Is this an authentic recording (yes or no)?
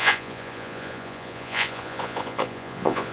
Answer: no